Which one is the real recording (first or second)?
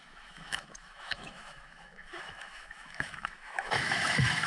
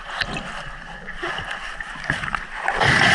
second